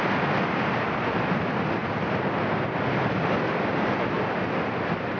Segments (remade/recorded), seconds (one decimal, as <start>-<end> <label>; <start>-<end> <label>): 0.0-5.2 recorded